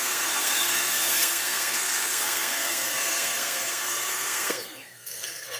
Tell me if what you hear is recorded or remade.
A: remade